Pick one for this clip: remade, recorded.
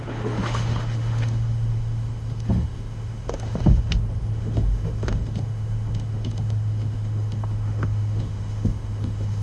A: remade